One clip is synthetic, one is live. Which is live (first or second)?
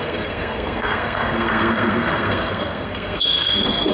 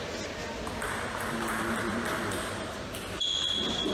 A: second